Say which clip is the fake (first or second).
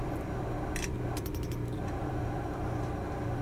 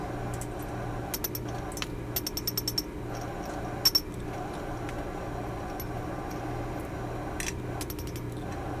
first